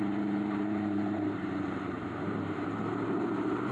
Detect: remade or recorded remade